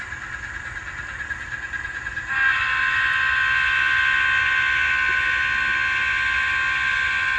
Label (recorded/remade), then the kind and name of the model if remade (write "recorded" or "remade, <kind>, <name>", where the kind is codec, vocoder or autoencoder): recorded